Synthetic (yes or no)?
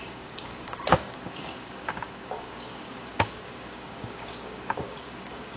yes